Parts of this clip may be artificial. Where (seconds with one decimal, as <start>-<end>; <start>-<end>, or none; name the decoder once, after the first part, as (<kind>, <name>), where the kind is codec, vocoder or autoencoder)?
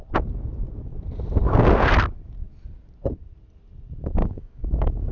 4.2-5.1 (codec, DAC)